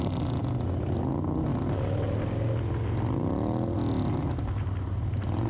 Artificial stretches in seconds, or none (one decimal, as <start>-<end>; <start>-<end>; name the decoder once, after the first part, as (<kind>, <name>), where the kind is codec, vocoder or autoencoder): none